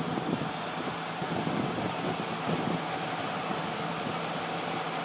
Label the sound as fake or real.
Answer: real